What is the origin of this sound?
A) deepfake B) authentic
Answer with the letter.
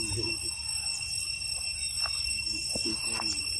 B